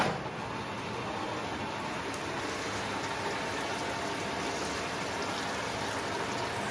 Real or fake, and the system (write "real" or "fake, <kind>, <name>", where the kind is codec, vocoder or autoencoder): real